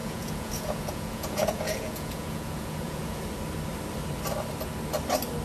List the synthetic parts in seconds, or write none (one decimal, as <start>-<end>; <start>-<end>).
0.0-3.2